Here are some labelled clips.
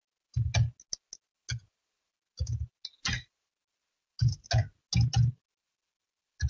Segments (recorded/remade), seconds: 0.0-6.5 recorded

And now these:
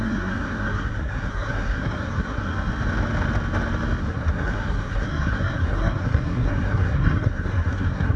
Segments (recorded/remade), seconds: 0.0-2.5 remade; 2.5-4.0 recorded; 4.0-8.2 remade